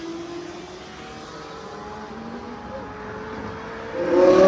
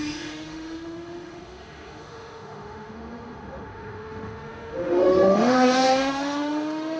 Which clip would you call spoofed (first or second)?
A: second